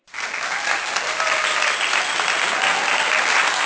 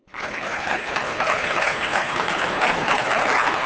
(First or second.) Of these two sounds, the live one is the first